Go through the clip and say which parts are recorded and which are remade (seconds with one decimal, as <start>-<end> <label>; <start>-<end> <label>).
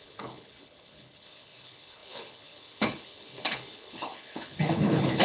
0.0-5.2 remade